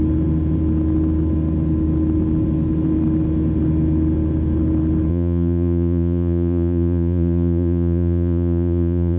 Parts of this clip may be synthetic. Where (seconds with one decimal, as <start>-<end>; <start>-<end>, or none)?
5.1-9.2